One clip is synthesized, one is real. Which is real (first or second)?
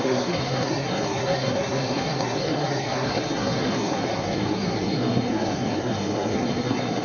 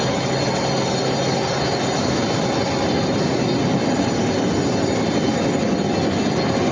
second